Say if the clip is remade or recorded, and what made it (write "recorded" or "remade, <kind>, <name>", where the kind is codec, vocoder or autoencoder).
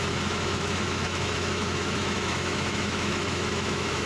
remade, autoencoder, DAC-VAE